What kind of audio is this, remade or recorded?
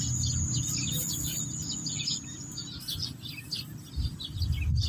recorded